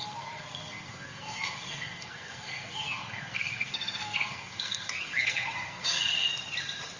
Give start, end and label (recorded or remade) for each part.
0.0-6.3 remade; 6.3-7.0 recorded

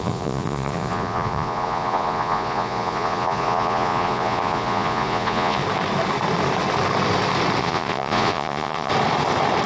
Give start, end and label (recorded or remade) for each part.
0.0-5.6 remade; 5.6-7.6 recorded; 7.6-8.9 remade; 8.9-9.7 recorded

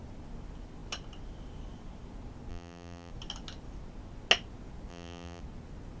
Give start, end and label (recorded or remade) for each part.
0.0-2.5 recorded; 2.5-3.1 remade; 3.1-4.9 recorded; 4.9-5.4 remade; 5.4-6.0 recorded